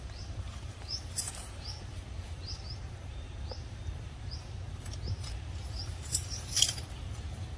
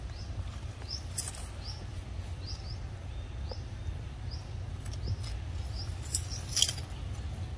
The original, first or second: second